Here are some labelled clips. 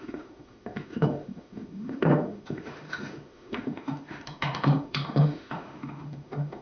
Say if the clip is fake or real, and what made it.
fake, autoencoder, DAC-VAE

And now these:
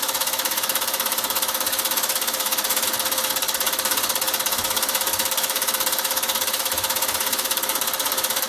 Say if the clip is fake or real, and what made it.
fake, autoencoder, DAC-VAE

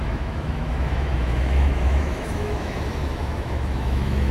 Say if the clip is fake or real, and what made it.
fake, autoencoder, DAC-VAE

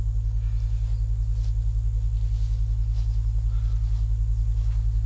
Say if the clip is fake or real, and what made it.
real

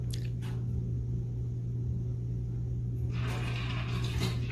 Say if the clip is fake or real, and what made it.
real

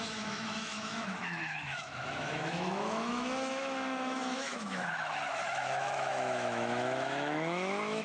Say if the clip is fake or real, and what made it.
fake, autoencoder, DAC-VAE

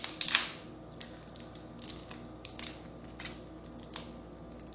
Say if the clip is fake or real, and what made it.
real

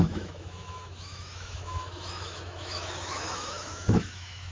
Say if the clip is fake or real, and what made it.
fake, autoencoder, DAC-VAE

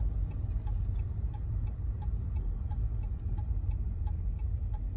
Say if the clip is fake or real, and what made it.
real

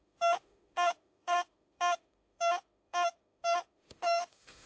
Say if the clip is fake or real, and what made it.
fake, autoencoder, DAC-VAE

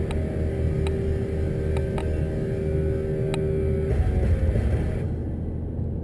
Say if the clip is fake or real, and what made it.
real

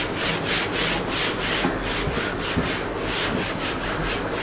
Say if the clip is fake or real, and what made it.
real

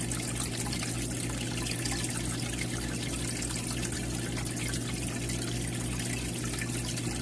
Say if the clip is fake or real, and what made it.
real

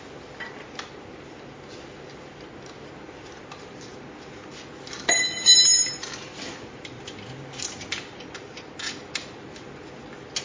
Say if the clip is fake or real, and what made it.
real